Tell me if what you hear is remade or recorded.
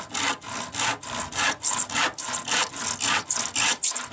recorded